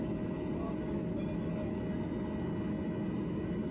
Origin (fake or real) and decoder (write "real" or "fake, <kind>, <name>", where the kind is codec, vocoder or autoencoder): real